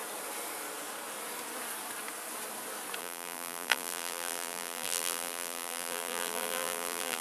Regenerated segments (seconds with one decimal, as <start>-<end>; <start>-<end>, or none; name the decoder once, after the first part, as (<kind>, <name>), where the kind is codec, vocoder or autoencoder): 3.0-7.2 (vocoder, BigVGAN v2)